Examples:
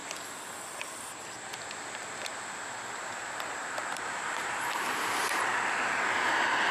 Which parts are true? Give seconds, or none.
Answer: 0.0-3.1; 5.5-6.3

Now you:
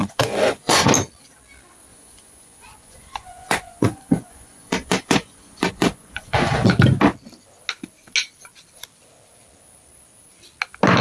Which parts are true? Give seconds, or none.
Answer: 0.9-1.9; 6.7-11.0